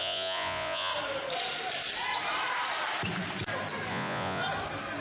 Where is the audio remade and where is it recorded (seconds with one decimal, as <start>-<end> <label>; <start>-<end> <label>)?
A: 0.0-0.9 remade; 0.9-3.9 recorded; 3.9-4.4 remade; 4.4-5.0 recorded